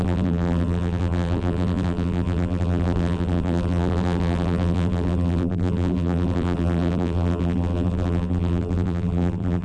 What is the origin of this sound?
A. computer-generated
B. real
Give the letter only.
A